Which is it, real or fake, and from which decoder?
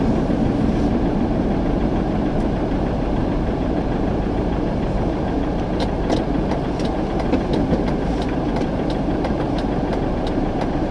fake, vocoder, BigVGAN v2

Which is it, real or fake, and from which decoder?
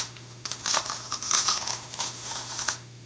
fake, autoencoder, DAC-VAE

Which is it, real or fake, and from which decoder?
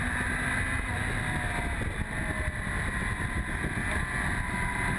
real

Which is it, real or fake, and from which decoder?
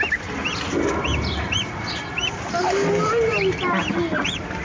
fake, vocoder, BigVGAN v2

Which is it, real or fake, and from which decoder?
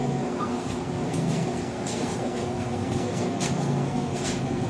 fake, codec, SNAC